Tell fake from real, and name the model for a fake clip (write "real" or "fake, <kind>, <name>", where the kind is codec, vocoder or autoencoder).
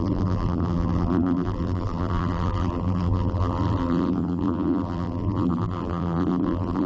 fake, vocoder, BigVGAN v2